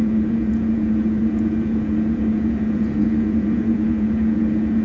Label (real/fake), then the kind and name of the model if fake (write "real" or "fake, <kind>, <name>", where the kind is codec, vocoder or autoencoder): fake, vocoder, Vocos